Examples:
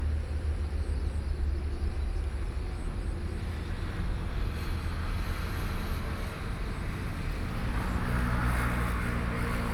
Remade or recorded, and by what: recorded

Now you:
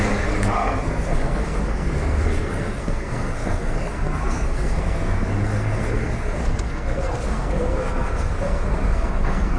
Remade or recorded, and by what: remade, codec, SNAC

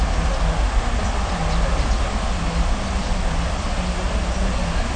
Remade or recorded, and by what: recorded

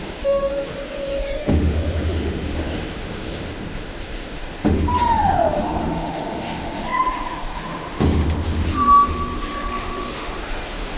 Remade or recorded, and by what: remade, autoencoder, DAC-VAE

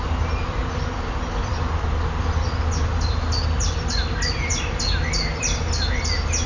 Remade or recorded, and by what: recorded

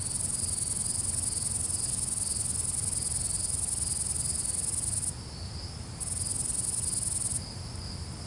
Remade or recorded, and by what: recorded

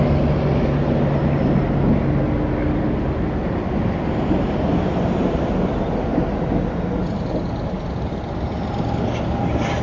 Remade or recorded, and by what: recorded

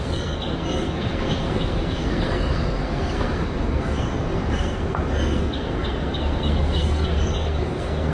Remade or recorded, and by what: remade, codec, SNAC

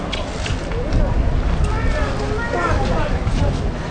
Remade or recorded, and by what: recorded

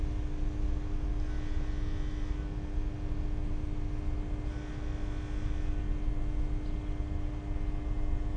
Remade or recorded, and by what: recorded